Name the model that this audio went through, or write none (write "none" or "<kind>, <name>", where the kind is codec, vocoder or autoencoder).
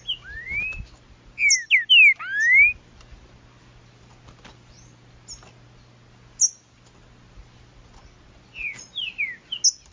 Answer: none